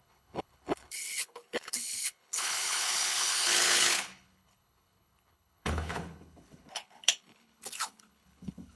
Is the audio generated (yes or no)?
yes